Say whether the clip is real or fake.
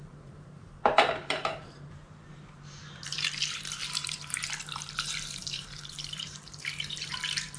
fake